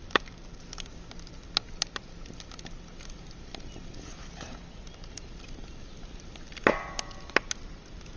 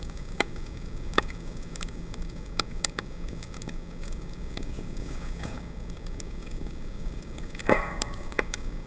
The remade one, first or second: second